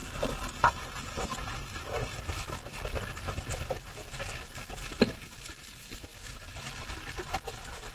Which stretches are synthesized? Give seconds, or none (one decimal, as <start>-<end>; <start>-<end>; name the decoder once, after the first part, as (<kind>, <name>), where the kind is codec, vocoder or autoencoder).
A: none